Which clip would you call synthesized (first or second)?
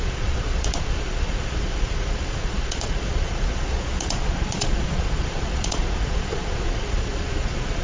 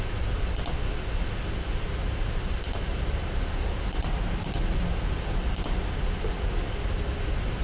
first